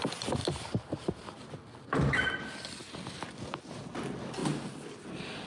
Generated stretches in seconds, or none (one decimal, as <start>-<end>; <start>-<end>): 0.4-1.5; 2.8-3.9